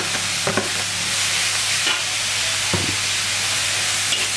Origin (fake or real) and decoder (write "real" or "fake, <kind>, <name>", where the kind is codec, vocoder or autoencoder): real